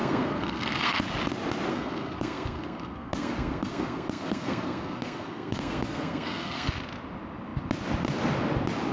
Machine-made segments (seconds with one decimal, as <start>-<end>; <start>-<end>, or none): 0.0-1.0; 1.7-6.7